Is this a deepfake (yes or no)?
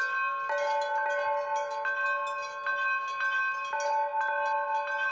no